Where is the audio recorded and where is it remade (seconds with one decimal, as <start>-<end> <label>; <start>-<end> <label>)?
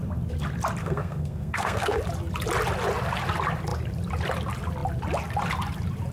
0.0-0.8 recorded; 0.8-2.0 remade; 2.0-6.1 recorded